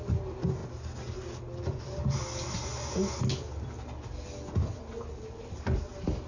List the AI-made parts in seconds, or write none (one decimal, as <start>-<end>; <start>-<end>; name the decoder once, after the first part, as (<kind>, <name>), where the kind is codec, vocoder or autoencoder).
none